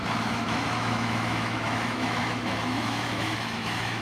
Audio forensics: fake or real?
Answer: fake